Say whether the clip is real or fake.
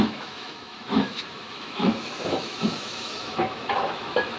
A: fake